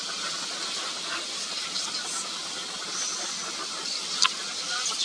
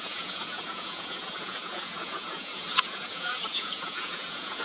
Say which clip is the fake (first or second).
second